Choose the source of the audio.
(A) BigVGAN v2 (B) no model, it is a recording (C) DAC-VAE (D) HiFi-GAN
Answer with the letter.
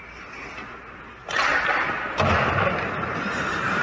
B